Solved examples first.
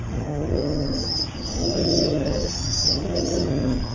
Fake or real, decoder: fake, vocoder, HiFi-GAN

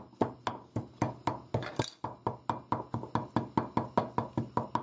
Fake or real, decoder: real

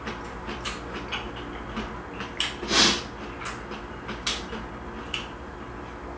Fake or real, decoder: real